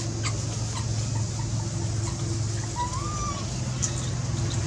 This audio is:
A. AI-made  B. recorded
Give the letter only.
B